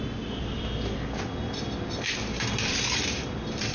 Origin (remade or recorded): recorded